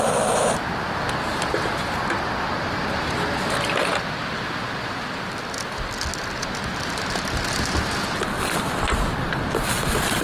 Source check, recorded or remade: recorded